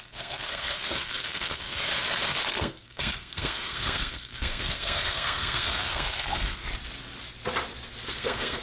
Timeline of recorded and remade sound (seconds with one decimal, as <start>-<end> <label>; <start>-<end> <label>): 0.0-1.9 remade; 1.9-2.5 recorded; 2.5-6.6 remade; 6.6-8.1 recorded; 8.1-8.6 remade